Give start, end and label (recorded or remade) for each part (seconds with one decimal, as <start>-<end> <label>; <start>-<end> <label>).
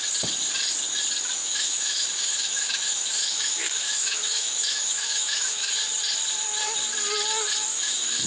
0.0-1.4 recorded; 1.4-5.8 remade; 5.8-7.7 recorded; 7.7-8.3 remade